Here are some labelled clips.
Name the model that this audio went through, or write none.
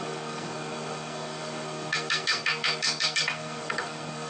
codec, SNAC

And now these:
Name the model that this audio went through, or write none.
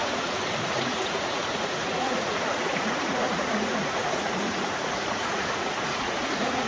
vocoder, Vocos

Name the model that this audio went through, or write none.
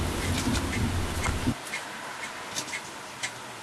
none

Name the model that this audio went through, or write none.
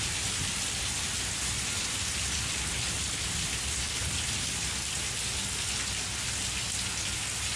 none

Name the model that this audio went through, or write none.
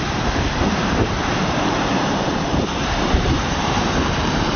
vocoder, BigVGAN v2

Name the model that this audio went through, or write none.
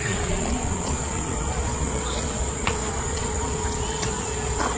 vocoder, Vocos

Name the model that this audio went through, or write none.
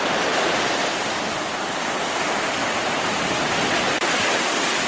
vocoder, BigVGAN v2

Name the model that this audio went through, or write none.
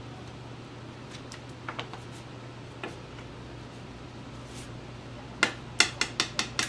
none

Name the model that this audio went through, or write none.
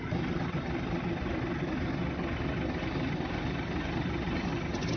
none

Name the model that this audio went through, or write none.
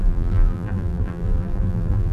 vocoder, BigVGAN v2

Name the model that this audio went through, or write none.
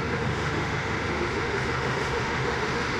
autoencoder, DAC-VAE